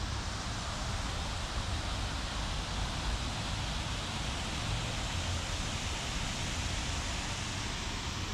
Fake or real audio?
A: real